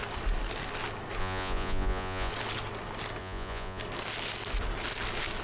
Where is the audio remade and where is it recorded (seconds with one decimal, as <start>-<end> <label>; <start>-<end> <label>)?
0.0-1.2 recorded; 1.2-2.3 remade; 2.3-3.2 recorded; 3.2-3.8 remade; 3.8-5.4 recorded